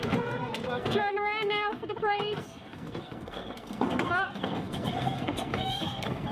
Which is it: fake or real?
fake